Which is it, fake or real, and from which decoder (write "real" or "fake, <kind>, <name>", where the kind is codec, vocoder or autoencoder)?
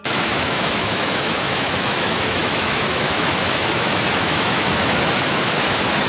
fake, autoencoder, DAC-VAE